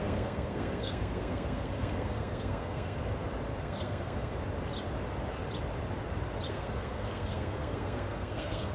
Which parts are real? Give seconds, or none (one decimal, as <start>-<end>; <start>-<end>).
3.0-3.6; 4.3-6.5